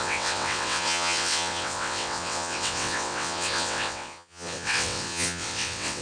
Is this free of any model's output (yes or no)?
no